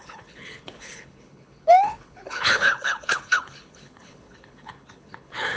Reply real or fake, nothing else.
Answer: fake